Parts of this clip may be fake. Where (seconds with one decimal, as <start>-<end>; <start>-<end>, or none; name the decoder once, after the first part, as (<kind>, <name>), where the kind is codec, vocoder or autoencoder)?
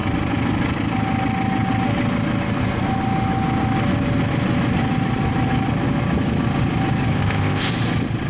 7.1-7.7 (codec, ZipCodec)